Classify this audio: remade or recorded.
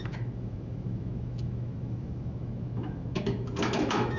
remade